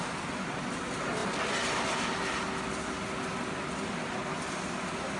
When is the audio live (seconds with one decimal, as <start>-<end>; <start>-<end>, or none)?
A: 0.0-5.2